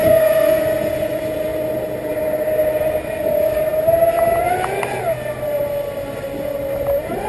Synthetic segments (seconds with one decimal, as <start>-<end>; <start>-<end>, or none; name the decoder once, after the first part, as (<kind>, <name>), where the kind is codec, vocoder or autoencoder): 0.0-0.6 (codec, SNAC)